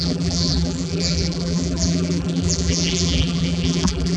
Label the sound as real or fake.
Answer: fake